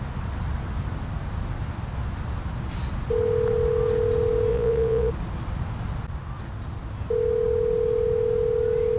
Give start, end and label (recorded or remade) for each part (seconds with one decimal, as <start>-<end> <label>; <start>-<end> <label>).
0.0-4.5 recorded; 4.5-5.1 remade; 5.1-9.0 recorded

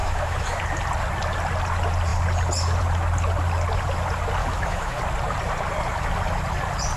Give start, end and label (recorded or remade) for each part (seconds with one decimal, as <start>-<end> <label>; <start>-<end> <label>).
0.0-0.6 remade; 0.6-4.4 recorded; 4.4-5.0 remade; 5.0-7.0 recorded

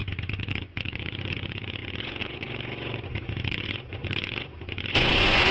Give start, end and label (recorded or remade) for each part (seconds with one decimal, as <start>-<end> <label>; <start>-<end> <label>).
0.0-5.5 remade